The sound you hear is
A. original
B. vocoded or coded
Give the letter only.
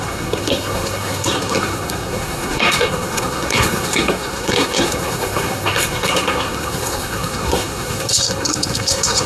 B